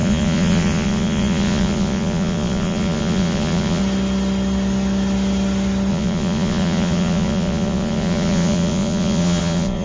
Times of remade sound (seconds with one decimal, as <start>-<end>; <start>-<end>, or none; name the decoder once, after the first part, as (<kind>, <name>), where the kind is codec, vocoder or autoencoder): 0.0-3.8 (vocoder, Vocos); 5.9-9.8